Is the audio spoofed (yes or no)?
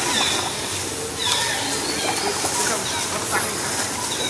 no